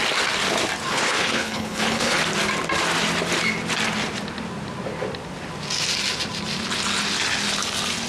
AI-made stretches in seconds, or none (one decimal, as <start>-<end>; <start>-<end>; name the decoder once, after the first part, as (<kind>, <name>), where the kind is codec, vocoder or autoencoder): 0.9-2.2 (codec, HILCodec)